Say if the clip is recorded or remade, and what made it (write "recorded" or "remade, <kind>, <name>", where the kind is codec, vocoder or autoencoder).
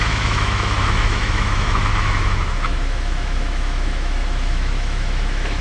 remade, autoencoder, DAC-VAE